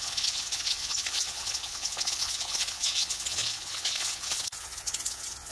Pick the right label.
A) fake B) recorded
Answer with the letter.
A